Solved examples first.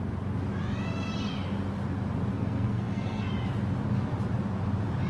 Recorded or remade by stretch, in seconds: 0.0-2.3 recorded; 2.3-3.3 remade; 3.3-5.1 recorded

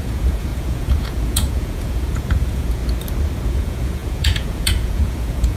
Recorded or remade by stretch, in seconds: 0.0-2.8 remade; 2.8-3.5 recorded; 3.5-5.6 remade

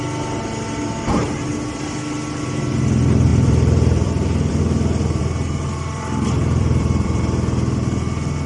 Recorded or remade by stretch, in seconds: 0.0-3.3 recorded; 3.3-4.6 remade; 4.6-5.2 recorded; 5.2-7.2 remade; 7.2-8.5 recorded

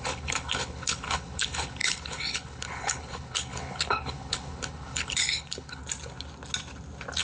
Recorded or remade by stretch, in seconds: 0.0-5.8 remade; 5.8-7.2 recorded

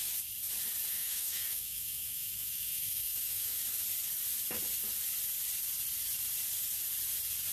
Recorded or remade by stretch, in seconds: 0.0-0.9 recorded; 0.9-3.6 remade; 3.6-7.5 recorded